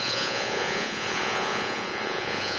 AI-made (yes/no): yes